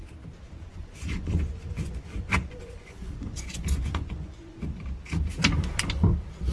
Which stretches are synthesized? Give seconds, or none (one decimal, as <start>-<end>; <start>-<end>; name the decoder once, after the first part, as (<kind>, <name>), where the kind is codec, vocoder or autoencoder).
0.7-4.6 (vocoder, Vocos)